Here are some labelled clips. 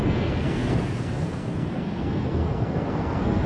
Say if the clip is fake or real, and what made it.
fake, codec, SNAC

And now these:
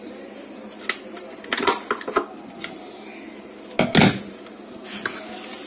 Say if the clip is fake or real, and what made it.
real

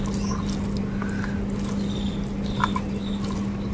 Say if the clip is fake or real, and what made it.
real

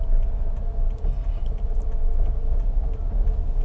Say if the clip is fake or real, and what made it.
real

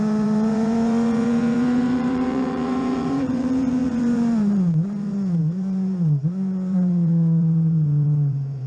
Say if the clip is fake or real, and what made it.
fake, vocoder, Vocos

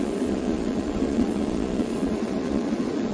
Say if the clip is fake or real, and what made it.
fake, vocoder, Vocos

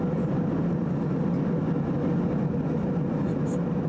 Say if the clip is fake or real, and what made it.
real